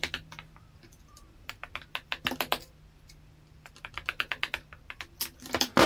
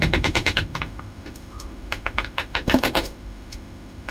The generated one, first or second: second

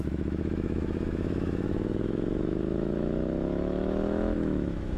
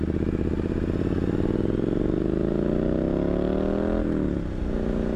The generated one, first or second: first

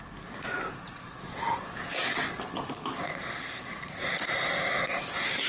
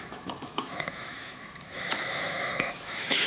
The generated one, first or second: second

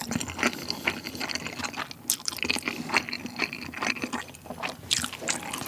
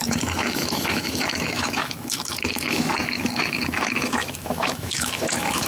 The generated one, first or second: second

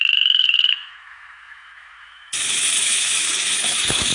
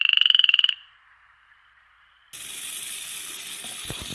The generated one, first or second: first